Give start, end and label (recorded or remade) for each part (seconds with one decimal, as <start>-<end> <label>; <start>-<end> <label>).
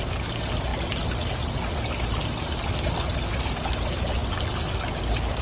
0.0-5.4 recorded